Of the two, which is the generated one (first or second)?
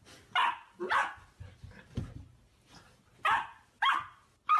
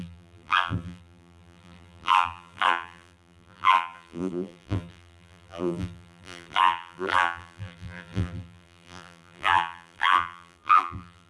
second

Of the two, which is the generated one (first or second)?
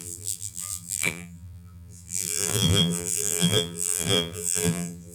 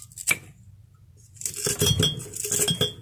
first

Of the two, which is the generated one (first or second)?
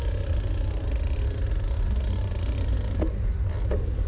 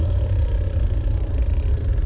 second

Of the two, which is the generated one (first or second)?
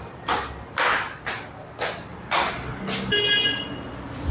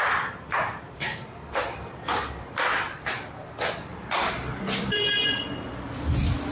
second